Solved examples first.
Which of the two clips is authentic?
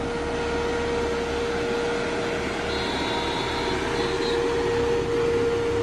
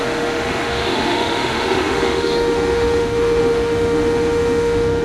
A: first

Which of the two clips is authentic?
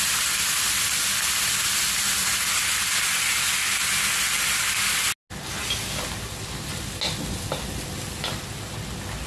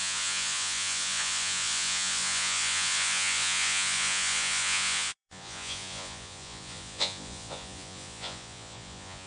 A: first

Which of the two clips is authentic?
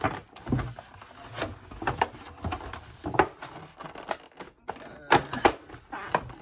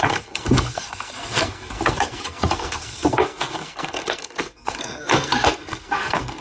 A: first